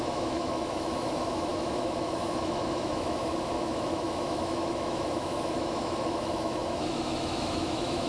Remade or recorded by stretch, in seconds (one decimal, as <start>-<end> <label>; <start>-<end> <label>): 0.0-8.1 remade